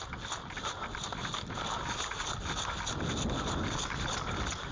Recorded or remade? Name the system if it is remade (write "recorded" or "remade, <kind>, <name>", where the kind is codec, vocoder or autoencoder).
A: recorded